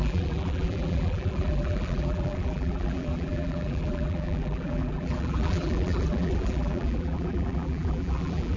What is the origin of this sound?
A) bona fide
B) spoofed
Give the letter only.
B